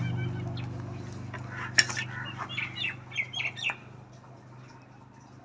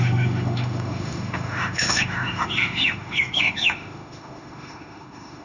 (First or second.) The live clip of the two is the first